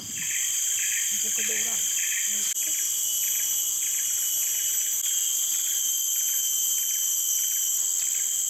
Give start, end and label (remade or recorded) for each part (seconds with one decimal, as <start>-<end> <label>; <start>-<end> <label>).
0.0-8.5 recorded